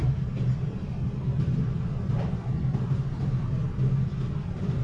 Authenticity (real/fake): real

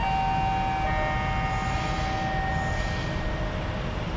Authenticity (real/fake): real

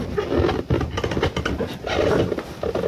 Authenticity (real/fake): real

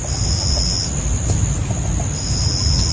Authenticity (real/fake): real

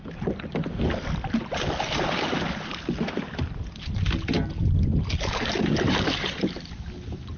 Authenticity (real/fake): real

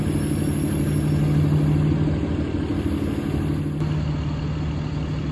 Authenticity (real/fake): real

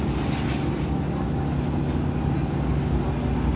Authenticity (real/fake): real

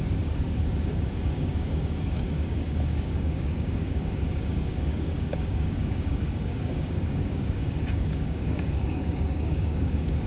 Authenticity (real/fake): fake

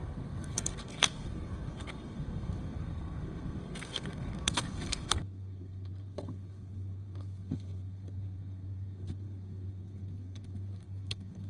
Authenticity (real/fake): fake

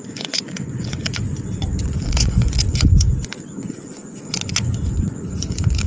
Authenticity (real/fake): fake